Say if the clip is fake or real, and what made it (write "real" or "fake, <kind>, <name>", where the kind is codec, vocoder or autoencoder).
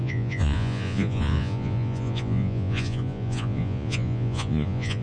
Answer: fake, vocoder, Vocos